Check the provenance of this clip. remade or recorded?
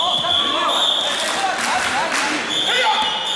recorded